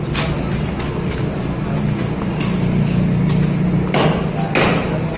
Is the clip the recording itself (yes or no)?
yes